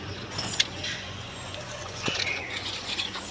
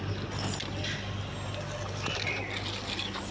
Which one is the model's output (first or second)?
first